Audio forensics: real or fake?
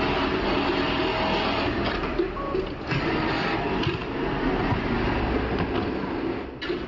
real